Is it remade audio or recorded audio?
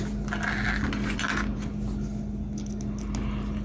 recorded